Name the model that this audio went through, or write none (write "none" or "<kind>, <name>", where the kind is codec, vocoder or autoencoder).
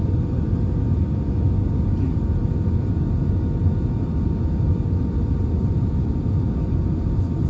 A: none